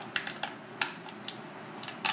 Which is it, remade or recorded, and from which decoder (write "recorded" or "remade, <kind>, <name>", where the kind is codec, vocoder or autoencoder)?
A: recorded